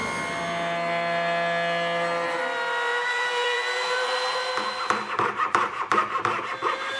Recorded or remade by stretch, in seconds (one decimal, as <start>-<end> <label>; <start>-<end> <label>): 0.0-2.4 recorded; 2.4-7.0 remade